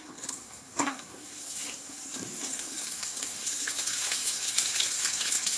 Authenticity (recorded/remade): remade